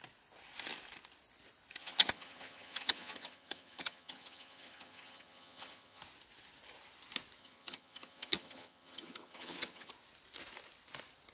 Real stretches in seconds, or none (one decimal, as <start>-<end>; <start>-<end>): 0.0-1.8; 6.0-7.4; 9.9-11.3